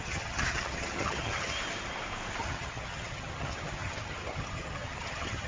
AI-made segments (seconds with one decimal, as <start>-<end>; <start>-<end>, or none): 0.0-1.6; 2.4-5.5